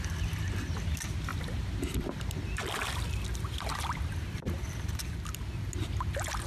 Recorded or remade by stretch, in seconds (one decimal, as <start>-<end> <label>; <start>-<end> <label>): 0.0-6.5 recorded